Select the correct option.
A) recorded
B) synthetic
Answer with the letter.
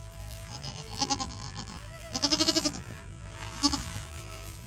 B